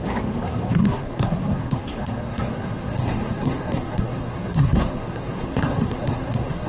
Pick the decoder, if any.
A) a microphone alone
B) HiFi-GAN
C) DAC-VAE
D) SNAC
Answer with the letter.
D